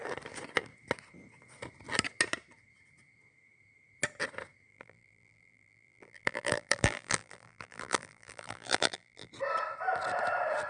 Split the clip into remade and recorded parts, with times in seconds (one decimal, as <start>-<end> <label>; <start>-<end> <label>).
0.0-4.7 recorded; 4.7-9.3 remade; 9.3-10.7 recorded